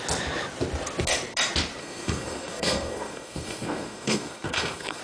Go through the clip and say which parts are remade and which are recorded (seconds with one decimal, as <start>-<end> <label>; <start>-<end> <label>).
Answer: 0.0-1.8 recorded; 1.8-5.0 remade